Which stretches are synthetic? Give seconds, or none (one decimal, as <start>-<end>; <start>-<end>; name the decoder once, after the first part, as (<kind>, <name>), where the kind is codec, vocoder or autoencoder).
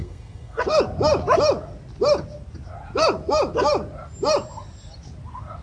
0.0-0.6 (codec, SNAC)